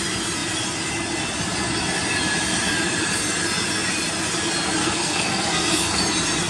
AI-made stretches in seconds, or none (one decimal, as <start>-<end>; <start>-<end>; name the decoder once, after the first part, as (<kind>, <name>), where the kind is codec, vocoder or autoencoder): 4.8-6.0 (codec, SNAC)